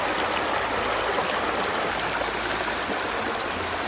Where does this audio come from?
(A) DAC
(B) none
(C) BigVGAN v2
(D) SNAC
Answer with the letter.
B